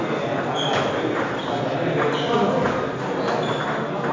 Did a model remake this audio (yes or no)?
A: no